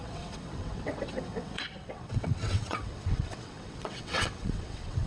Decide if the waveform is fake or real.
fake